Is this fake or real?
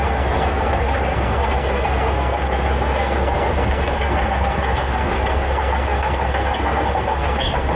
fake